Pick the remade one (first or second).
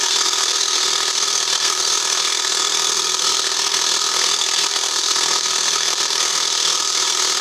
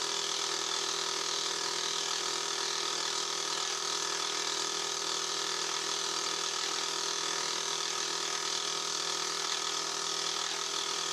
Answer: first